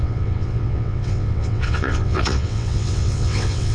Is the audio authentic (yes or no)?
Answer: no